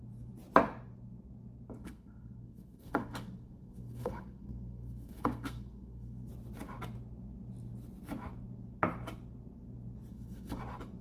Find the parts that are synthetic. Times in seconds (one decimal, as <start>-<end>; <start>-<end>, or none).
1.8-6.3; 10.1-10.6